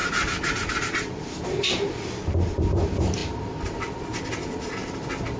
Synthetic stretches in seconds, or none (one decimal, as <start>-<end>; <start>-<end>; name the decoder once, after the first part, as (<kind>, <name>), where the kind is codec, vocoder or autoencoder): none